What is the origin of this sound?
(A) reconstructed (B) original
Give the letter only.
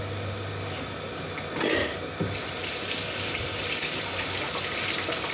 B